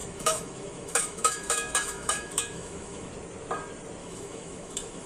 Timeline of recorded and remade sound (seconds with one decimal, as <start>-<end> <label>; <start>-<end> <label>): 0.0-3.1 remade; 3.1-4.0 recorded; 4.0-5.1 remade